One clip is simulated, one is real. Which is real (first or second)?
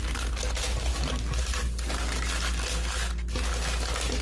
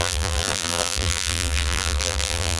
first